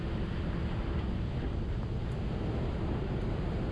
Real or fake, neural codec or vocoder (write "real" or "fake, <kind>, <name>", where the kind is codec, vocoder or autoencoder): real